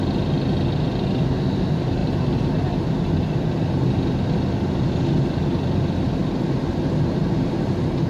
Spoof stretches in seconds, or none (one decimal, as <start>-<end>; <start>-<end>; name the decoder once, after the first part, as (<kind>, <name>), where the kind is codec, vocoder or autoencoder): none